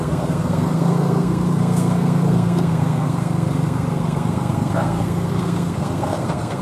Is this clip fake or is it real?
fake